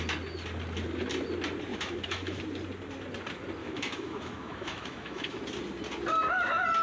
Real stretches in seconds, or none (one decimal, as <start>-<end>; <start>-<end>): 0.0-1.7; 2.4-3.6; 5.4-6.8